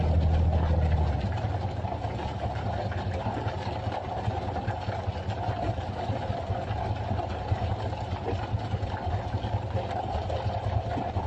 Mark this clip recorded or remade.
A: recorded